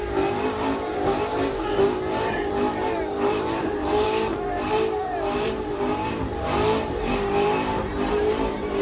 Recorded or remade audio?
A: remade